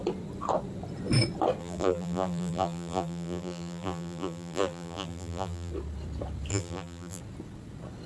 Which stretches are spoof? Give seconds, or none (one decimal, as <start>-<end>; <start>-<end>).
1.6-5.7; 6.5-7.2